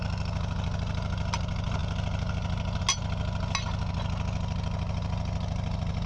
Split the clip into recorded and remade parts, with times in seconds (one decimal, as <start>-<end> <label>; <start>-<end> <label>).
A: 0.0-6.1 recorded

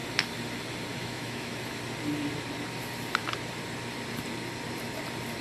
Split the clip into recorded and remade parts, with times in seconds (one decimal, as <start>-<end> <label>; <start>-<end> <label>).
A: 0.0-1.0 recorded; 1.0-1.5 remade; 1.5-5.4 recorded